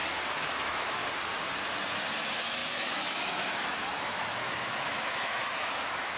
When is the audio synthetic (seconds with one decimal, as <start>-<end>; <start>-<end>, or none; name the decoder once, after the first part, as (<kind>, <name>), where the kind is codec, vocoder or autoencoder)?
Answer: 0.6-1.0 (autoencoder, DAC-VAE); 2.2-6.2